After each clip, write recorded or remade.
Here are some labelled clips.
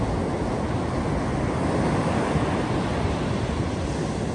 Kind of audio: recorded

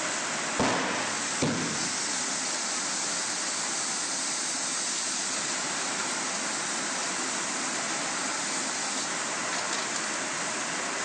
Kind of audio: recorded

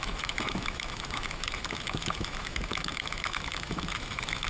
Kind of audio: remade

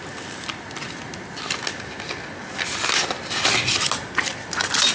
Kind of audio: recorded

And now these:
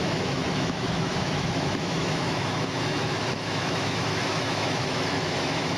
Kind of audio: remade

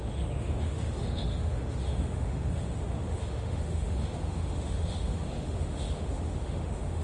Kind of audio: remade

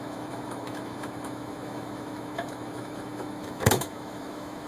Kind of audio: remade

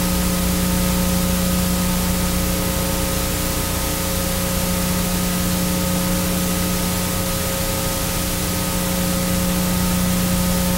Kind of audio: recorded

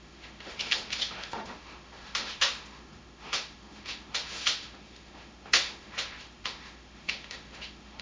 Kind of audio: remade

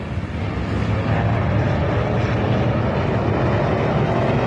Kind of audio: recorded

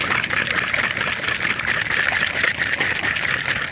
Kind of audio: recorded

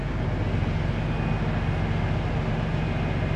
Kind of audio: recorded